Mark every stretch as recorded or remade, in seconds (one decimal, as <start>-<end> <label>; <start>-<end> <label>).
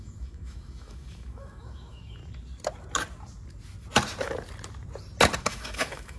0.0-2.2 remade; 2.2-5.4 recorded; 5.4-6.2 remade